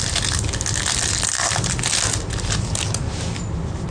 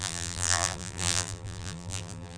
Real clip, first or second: first